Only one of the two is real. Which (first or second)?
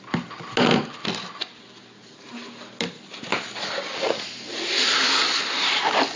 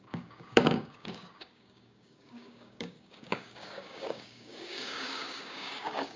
first